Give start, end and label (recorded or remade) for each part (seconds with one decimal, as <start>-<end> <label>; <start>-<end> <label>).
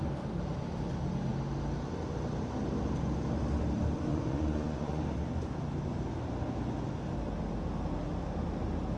0.0-4.1 recorded; 4.1-5.0 remade; 5.0-9.0 recorded